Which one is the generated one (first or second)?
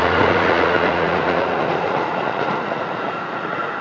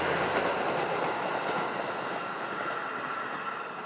first